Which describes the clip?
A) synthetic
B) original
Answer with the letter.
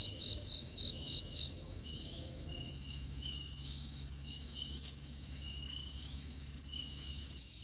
A